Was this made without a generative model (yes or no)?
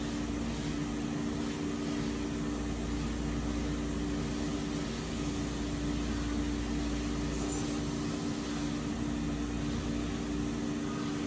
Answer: yes